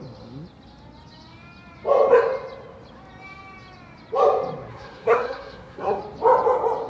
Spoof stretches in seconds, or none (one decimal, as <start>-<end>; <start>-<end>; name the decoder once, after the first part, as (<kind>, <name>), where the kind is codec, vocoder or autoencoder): 4.7-6.0 (codec, SNAC)